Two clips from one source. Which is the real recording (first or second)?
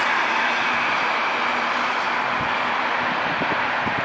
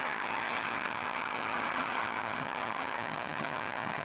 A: first